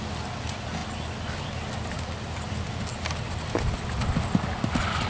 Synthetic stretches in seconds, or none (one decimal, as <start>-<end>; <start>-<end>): none